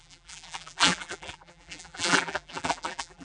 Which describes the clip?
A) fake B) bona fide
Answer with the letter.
A